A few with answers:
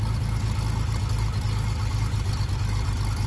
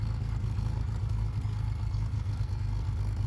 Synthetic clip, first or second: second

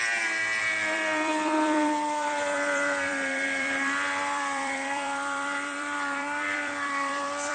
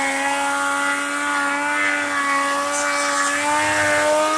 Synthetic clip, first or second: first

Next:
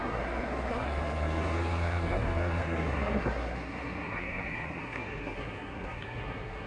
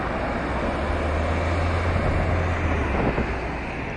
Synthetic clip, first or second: first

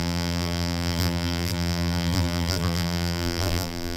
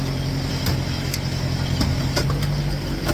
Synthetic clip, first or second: first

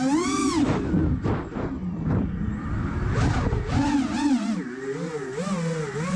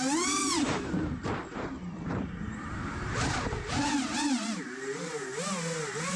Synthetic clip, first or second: second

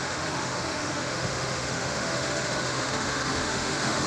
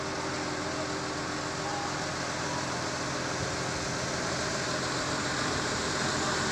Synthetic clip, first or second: first